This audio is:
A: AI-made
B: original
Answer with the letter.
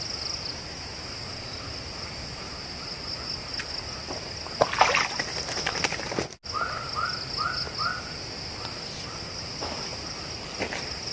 B